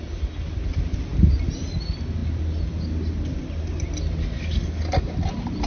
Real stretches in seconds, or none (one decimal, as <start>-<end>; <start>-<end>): 0.0-5.7